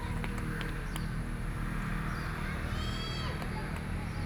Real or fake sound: real